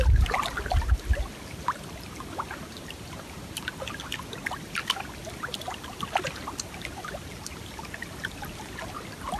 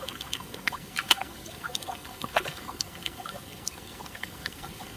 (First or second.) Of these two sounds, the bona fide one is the first